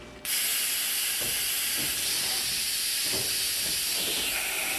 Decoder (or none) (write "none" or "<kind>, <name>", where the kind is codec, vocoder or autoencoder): none